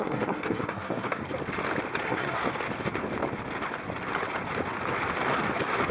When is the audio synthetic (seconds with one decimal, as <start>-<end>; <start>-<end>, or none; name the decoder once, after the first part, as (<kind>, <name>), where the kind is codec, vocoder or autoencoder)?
0.0-1.2 (codec, SNAC); 2.0-2.4